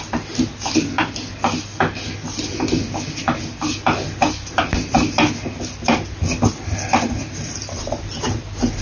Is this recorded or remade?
recorded